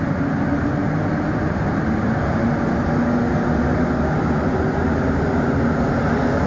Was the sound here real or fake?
real